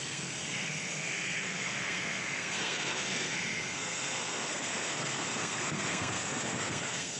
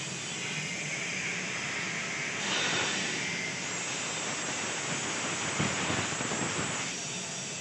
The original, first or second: second